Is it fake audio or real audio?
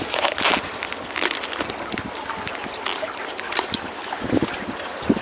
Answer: real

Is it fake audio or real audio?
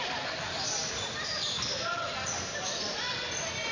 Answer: real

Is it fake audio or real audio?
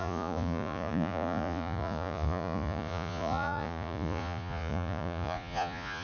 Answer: fake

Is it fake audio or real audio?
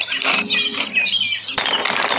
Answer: real